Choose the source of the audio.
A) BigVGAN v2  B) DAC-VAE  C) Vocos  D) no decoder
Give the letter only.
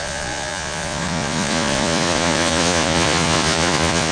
C